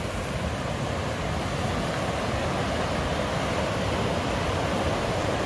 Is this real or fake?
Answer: real